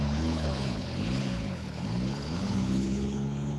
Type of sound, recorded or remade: remade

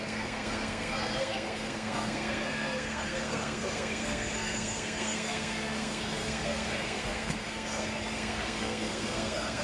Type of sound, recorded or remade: remade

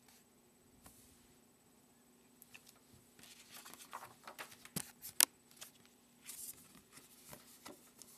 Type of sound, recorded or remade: recorded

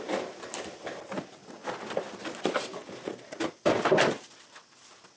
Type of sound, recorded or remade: recorded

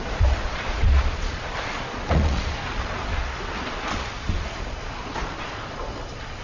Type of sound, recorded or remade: remade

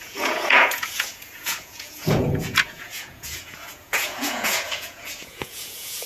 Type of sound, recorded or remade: remade